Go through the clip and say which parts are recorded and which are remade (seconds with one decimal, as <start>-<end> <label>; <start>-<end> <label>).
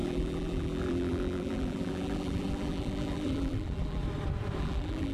0.0-4.0 remade; 4.0-4.6 recorded; 4.6-5.1 remade